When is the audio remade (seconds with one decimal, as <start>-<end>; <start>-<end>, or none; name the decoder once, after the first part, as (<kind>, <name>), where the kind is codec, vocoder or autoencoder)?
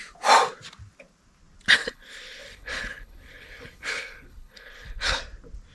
1.8-5.2 (codec, HILCodec)